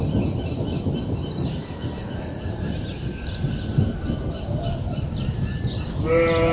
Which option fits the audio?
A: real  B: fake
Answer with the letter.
A